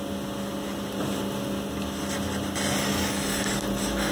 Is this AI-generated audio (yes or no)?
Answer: no